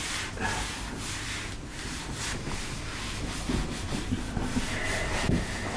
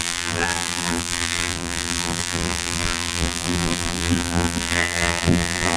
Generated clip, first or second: second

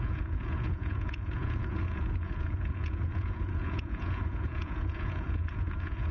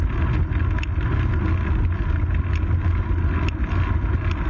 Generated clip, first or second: first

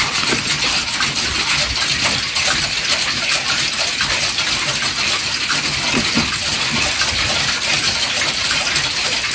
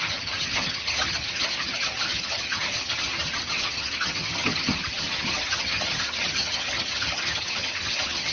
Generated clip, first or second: second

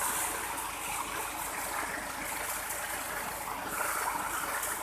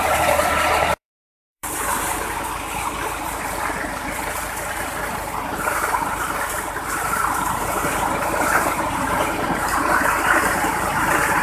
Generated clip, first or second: second